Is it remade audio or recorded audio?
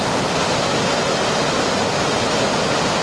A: recorded